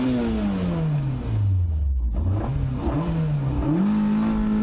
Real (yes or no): yes